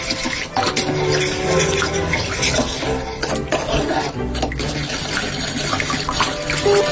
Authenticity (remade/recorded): recorded